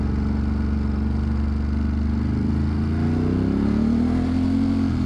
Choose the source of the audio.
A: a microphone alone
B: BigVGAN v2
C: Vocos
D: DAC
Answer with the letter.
A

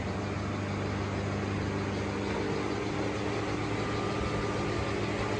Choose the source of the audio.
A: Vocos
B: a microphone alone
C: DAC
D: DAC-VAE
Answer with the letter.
B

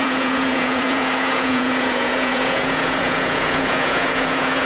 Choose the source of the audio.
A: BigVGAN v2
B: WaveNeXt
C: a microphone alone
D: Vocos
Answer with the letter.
D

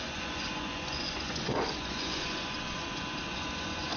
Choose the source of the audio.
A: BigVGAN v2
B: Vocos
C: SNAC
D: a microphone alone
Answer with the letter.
B